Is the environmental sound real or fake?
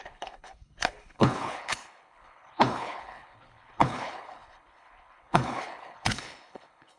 fake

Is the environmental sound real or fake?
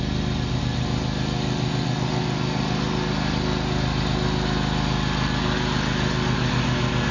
real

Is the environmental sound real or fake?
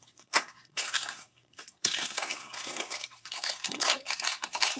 fake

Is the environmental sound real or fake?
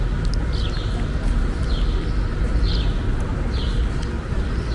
real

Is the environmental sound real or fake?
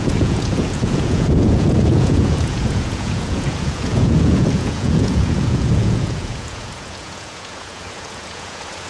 fake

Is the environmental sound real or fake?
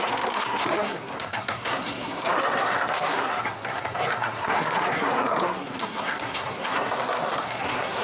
fake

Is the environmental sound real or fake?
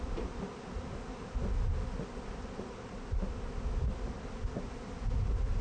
real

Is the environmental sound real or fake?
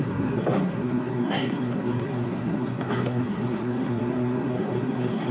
fake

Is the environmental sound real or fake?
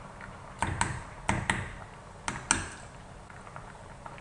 real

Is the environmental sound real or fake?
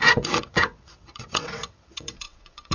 fake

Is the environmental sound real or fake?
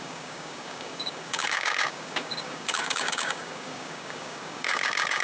fake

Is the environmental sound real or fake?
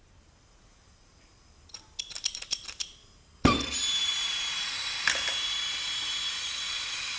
real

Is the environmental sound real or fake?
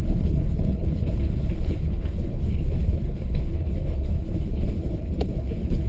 fake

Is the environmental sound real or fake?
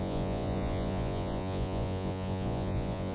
fake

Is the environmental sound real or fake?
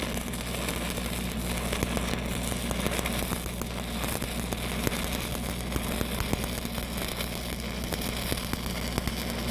real